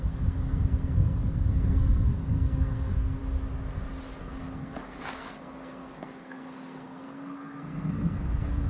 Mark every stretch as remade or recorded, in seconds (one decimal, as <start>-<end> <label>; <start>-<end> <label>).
0.0-3.2 remade; 3.2-4.2 recorded; 4.2-8.7 remade